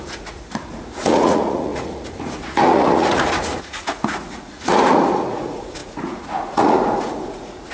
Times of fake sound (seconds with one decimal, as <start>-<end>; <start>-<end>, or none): 0.0-7.7